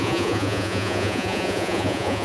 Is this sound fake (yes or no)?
yes